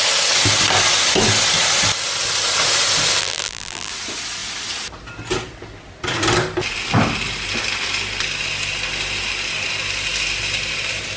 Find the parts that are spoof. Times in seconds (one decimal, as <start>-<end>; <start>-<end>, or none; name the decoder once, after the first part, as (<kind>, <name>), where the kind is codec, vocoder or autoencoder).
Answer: 3.2-3.9 (vocoder, BigVGAN v2)